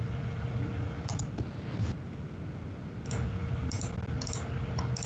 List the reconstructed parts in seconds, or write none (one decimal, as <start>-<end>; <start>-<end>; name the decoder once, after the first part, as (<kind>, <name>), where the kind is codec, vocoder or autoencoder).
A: 3.4-4.1 (vocoder, BigVGAN v2)